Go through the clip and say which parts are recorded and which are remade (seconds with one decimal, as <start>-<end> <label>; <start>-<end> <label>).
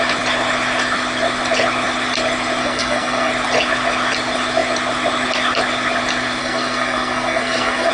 0.0-2.6 recorded; 2.6-3.3 remade; 3.3-6.4 recorded; 6.4-7.9 remade